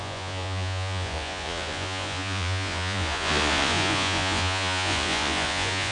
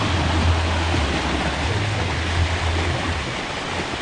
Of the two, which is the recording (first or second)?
second